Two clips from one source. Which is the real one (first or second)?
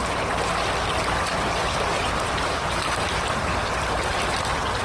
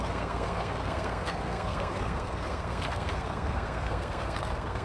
first